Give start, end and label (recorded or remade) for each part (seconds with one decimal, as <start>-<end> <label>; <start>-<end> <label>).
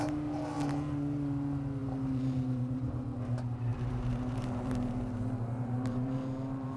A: 0.0-1.8 recorded; 1.8-2.8 remade; 2.8-3.7 recorded; 3.7-6.8 remade